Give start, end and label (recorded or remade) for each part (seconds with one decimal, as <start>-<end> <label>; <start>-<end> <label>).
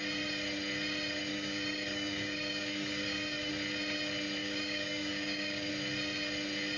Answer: 0.0-1.3 recorded; 1.3-3.5 remade; 3.5-4.4 recorded; 4.4-5.7 remade; 5.7-6.8 recorded